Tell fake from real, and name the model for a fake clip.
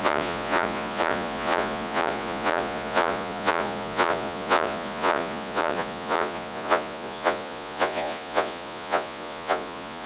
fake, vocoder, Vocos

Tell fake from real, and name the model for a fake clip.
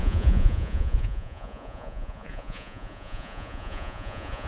fake, vocoder, Vocos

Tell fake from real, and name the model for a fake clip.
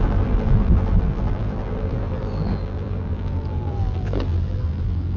fake, vocoder, BigVGAN v2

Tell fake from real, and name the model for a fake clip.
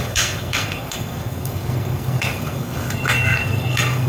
fake, codec, SNAC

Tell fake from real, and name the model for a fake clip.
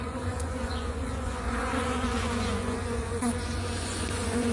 fake, vocoder, Vocos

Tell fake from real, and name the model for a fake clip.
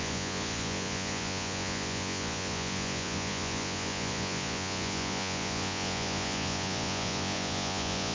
fake, vocoder, Vocos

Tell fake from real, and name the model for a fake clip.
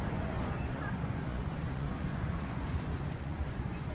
fake, vocoder, Vocos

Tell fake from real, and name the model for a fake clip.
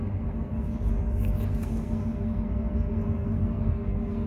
fake, codec, SNAC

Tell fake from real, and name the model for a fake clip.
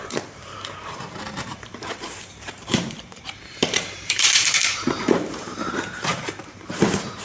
fake, vocoder, BigVGAN v2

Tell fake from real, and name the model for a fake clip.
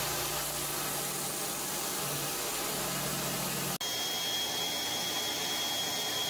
real